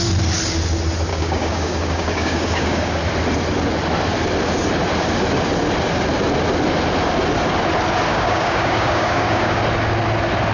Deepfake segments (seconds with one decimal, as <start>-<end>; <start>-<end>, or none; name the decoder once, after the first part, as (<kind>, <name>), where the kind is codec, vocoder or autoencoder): 1.1-3.0 (codec, DAC); 8.1-9.6